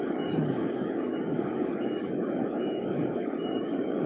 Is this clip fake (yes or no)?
yes